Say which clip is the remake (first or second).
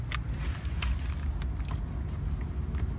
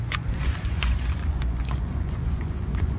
second